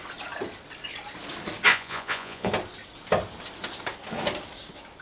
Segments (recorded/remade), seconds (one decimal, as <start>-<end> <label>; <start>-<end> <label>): 0.0-1.7 recorded; 1.7-2.5 remade; 2.5-5.0 recorded